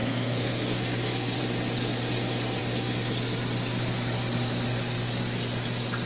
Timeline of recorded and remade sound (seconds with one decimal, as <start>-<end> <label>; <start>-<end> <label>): 0.0-1.4 remade; 1.4-6.1 recorded